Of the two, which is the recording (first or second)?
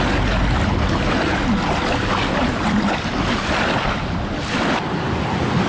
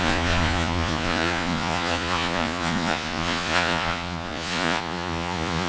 first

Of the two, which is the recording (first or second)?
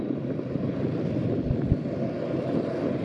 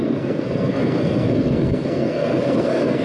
first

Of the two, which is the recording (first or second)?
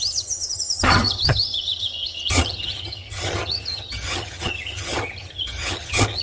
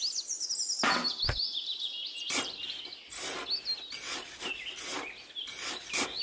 second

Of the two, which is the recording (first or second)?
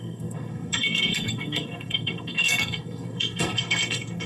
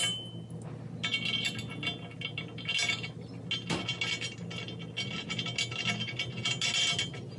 second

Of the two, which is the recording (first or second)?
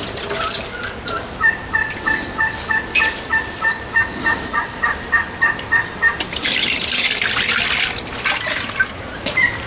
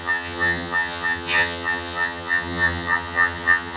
first